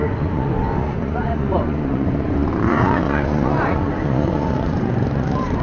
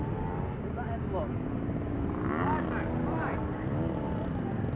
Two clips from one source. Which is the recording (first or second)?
second